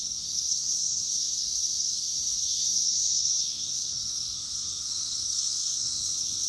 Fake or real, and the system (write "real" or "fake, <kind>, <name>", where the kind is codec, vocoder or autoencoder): fake, codec, SNAC